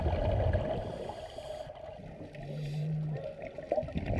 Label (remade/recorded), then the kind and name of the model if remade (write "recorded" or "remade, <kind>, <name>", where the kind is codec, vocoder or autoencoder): recorded